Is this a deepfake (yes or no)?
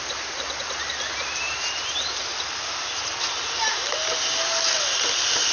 no